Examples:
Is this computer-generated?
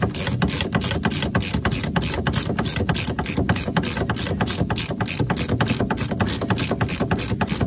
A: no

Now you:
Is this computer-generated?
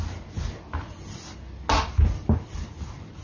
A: no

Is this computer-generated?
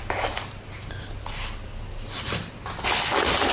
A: no